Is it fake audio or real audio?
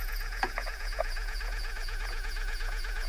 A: fake